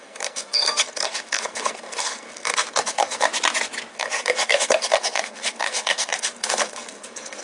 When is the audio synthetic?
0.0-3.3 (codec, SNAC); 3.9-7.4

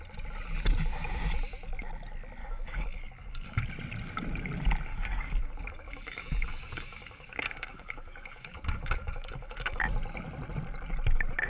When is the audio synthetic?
2.4-3.6 (codec, DAC); 4.9-9.8

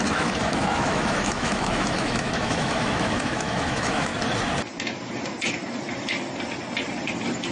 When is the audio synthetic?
0.0-4.1 (autoencoder, DAC-VAE)

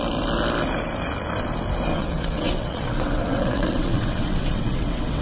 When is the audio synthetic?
1.9-5.2 (vocoder, WaveNeXt)

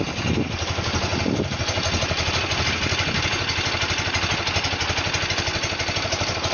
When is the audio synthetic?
none

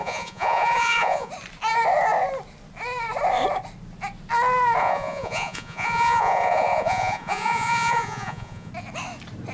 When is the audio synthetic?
0.0-1.3 (vocoder, Vocos); 4.8-8.7

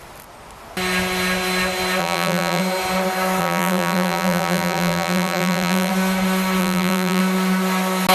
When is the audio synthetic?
2.0-2.6 (vocoder, BigVGAN v2); 3.4-5.9; 6.6-7.2

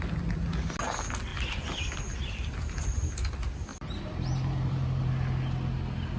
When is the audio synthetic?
1.3-3.3 (vocoder, BigVGAN v2); 3.7-5.1